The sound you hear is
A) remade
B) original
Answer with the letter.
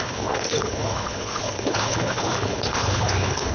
A